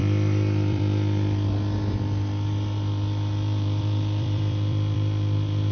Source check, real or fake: fake